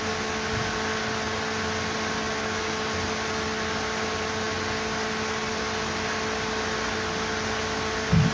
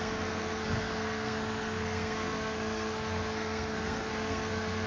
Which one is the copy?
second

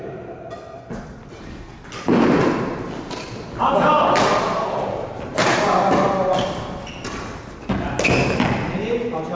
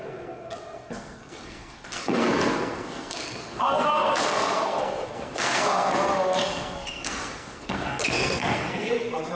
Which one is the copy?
second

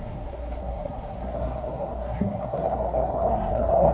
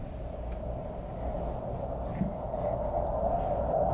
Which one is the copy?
first